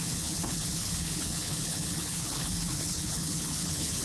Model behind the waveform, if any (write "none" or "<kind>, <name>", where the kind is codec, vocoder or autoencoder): codec, HILCodec